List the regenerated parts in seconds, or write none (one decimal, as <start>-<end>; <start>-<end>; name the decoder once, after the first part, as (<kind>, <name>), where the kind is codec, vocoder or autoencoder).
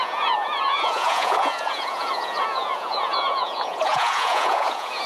0.0-5.1 (vocoder, Vocos)